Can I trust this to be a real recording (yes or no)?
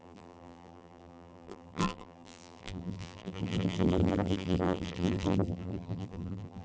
no